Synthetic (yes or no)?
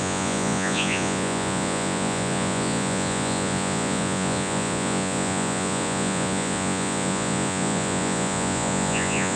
yes